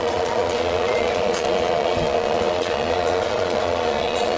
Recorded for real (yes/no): no